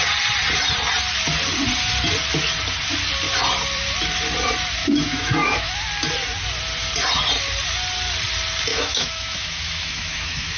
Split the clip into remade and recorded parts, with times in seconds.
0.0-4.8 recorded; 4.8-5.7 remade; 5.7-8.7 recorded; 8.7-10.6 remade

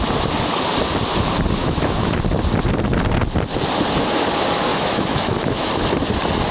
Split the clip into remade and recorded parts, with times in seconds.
0.0-1.6 recorded; 1.6-2.2 remade; 2.2-4.7 recorded; 4.7-5.7 remade; 5.7-6.5 recorded

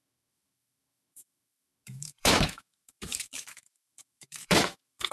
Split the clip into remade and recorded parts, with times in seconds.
0.0-5.1 remade

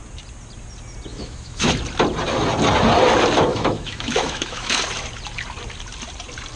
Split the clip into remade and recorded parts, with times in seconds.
0.0-1.1 recorded; 1.1-1.7 remade; 1.7-3.5 recorded; 3.5-4.8 remade; 4.8-6.6 recorded

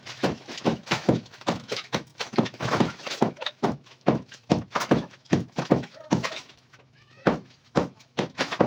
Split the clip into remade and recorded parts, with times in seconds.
0.0-8.7 remade

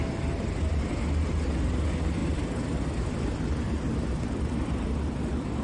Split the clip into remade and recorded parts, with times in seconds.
0.0-5.6 recorded

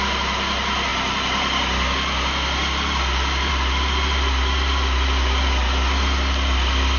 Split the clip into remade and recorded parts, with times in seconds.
0.0-7.0 recorded